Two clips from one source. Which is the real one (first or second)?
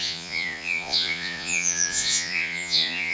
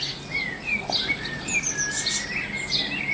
second